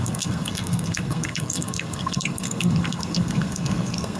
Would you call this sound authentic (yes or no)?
no